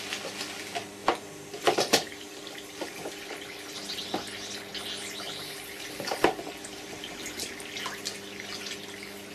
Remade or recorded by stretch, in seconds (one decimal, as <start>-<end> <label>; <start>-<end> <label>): 0.0-9.3 recorded